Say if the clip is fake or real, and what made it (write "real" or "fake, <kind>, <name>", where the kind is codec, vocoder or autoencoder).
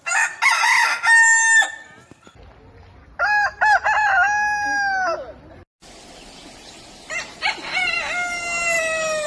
real